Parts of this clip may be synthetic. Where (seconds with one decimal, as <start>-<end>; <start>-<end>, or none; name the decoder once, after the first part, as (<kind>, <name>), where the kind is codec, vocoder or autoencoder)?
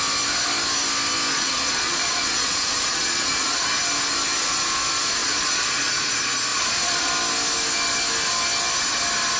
1.3-3.6 (vocoder, Vocos); 5.2-6.1; 6.5-7.1